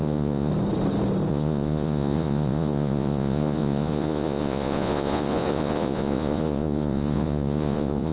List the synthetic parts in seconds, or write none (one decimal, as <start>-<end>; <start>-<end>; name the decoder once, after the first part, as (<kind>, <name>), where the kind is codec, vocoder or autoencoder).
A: 0.0-0.5 (vocoder, Vocos); 1.3-8.1